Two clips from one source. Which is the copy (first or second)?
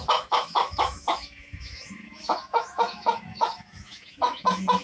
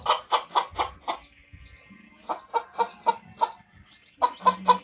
first